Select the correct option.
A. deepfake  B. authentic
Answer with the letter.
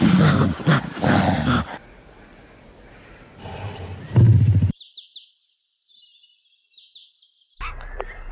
B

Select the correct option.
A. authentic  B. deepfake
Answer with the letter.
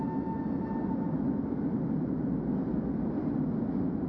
A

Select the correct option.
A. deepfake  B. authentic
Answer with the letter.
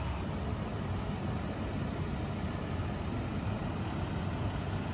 B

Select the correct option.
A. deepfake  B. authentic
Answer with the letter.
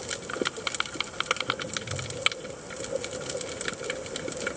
B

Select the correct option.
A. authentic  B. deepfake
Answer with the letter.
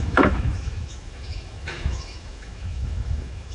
B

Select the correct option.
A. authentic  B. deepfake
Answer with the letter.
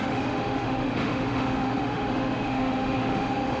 B